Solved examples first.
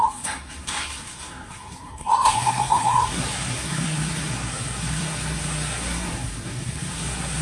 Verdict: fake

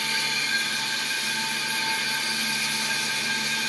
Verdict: real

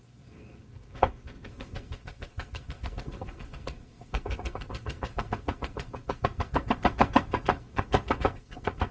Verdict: fake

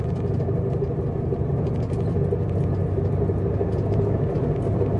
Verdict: real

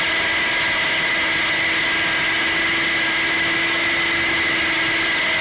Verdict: real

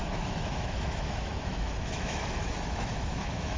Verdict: fake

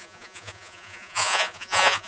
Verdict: fake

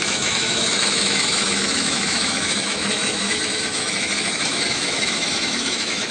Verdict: fake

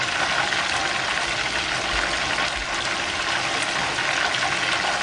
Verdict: real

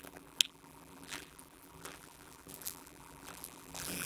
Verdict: fake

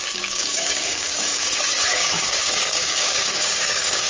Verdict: fake